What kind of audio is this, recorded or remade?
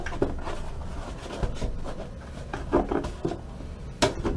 recorded